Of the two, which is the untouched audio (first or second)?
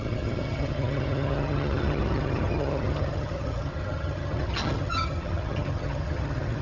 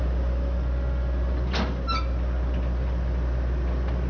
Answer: second